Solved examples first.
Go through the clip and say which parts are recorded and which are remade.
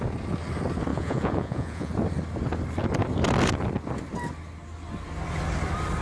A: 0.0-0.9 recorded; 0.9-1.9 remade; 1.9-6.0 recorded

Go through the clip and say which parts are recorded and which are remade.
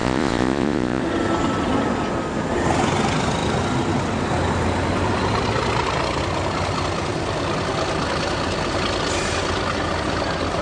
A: 0.0-1.0 remade; 1.0-10.6 recorded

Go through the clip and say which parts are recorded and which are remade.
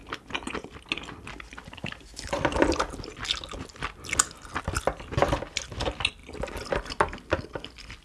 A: 0.0-8.0 recorded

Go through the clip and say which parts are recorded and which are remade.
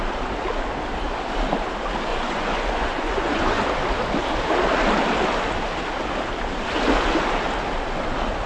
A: 0.0-2.1 recorded; 2.1-3.6 remade; 3.6-8.5 recorded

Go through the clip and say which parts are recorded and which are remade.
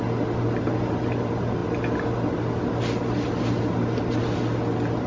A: 0.0-5.1 recorded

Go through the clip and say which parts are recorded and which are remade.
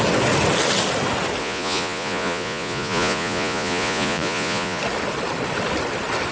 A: 0.0-1.4 recorded; 1.4-4.8 remade; 4.8-6.3 recorded